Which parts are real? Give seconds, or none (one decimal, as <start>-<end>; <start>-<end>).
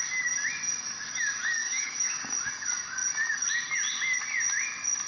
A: 0.0-1.6; 2.2-5.1